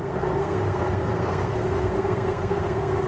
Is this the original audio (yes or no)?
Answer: no